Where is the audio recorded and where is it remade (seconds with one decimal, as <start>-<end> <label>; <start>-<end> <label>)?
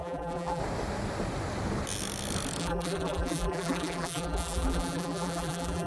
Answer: 0.0-0.6 remade; 0.6-2.6 recorded; 2.6-5.9 remade